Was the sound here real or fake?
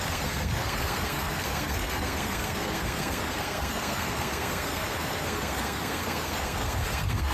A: fake